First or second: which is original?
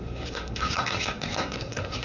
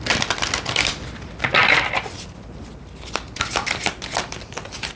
second